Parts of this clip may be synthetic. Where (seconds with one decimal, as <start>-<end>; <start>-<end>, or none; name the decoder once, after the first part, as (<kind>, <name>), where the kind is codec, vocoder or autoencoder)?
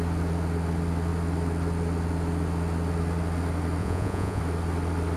3.8-4.4 (vocoder, Vocos)